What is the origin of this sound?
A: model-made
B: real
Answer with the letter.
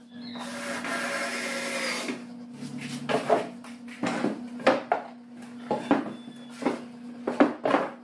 B